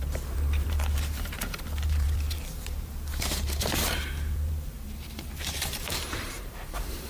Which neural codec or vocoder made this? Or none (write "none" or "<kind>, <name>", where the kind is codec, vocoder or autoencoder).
vocoder, BigVGAN v2